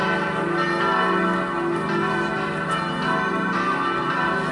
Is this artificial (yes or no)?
no